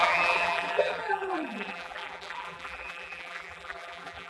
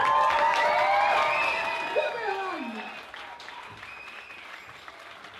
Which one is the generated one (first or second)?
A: first